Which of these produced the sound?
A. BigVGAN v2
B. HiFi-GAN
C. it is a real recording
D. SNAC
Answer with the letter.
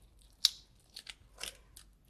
C